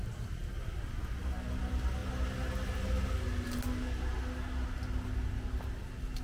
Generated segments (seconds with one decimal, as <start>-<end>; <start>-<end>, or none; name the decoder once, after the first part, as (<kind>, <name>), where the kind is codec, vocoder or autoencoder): none